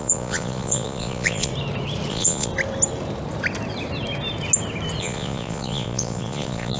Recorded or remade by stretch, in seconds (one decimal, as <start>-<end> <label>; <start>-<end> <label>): 0.0-1.5 remade; 1.5-2.1 recorded; 2.1-2.5 remade; 2.5-5.0 recorded; 5.0-6.8 remade